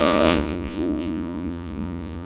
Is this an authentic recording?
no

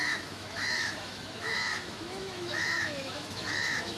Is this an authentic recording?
no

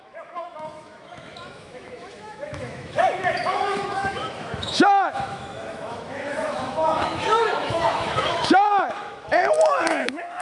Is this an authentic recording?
no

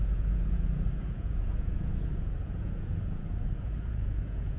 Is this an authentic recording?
no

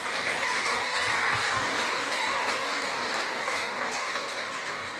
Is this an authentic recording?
no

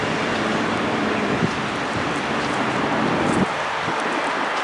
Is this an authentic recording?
no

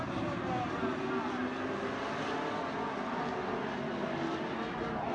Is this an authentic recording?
yes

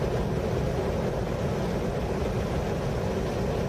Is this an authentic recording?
yes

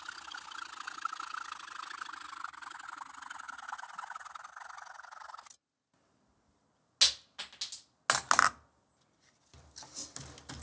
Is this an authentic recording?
yes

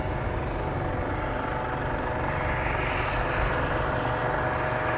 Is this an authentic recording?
yes